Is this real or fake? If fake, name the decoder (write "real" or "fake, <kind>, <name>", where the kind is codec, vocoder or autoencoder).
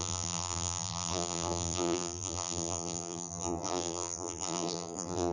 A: fake, vocoder, BigVGAN v2